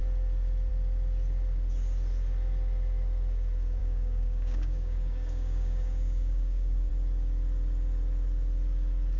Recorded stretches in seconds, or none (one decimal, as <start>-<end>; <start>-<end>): 0.0-3.8; 6.9-9.2

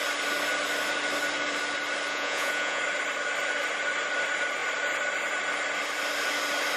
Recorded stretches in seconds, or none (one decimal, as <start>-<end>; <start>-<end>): 0.0-2.1; 2.8-6.8